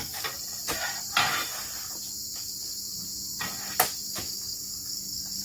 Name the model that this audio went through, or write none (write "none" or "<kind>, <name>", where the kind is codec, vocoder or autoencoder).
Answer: none